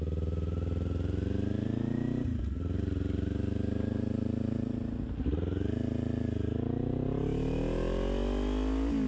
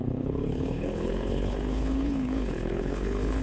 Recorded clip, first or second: first